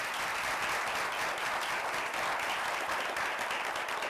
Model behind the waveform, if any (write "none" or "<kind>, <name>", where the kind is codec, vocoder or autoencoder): none